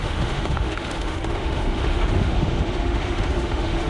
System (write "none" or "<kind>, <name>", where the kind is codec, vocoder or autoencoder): autoencoder, DAC-VAE